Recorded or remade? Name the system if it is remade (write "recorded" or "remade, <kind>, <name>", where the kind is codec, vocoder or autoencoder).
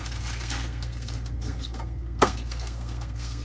remade, codec, SNAC